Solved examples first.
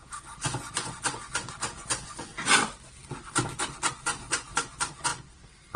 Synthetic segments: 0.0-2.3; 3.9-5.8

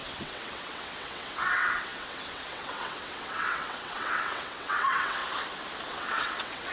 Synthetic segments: 0.0-5.2; 5.9-6.7

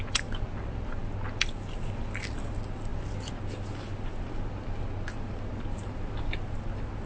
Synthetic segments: none